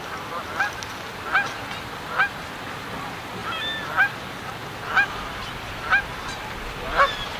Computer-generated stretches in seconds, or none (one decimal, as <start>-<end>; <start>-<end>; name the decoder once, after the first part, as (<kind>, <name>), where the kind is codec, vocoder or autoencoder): none